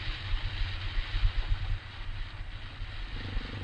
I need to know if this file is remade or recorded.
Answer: recorded